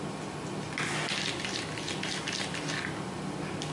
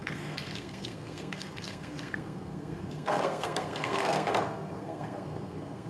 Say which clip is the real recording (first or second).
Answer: first